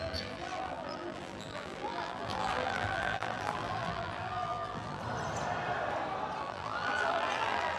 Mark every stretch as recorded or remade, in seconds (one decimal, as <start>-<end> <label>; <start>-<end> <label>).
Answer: 0.0-5.0 remade; 5.0-6.4 recorded; 6.4-7.8 remade